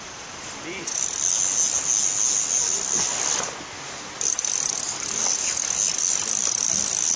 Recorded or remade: recorded